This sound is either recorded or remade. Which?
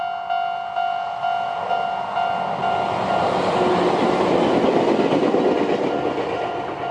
recorded